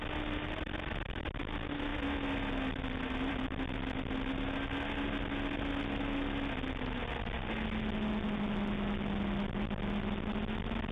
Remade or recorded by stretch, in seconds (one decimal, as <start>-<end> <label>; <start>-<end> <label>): 0.0-10.9 recorded

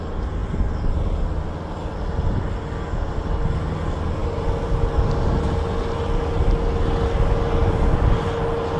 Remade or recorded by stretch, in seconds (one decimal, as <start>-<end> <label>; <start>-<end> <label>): 0.0-7.6 recorded; 7.6-8.2 remade; 8.2-8.8 recorded

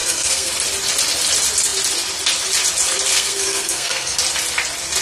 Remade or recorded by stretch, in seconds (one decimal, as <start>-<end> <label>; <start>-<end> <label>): 0.0-0.5 remade; 0.5-3.1 recorded; 3.1-4.2 remade; 4.2-5.0 recorded

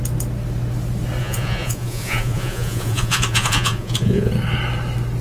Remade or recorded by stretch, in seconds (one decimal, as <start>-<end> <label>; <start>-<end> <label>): 0.0-1.2 recorded; 1.2-4.3 remade; 4.3-5.2 recorded

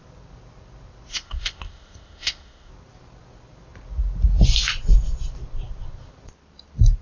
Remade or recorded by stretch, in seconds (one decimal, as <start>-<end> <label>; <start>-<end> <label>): 0.0-1.1 recorded; 1.1-2.7 remade; 2.7-7.0 recorded

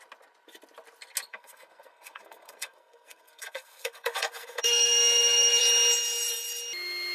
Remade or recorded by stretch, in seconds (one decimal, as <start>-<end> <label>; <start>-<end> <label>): 0.0-1.3 recorded; 1.3-5.6 remade; 5.6-7.1 recorded